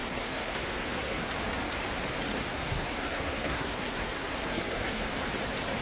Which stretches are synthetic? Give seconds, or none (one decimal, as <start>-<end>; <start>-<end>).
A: 0.0-1.3; 2.5-5.1